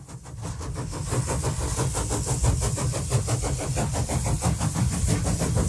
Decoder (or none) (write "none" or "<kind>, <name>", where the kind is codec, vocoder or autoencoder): none